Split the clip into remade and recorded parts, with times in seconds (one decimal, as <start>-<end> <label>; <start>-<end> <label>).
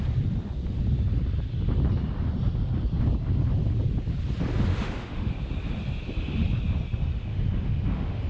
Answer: 0.0-4.7 recorded; 4.7-5.3 remade; 5.3-7.3 recorded; 7.3-8.3 remade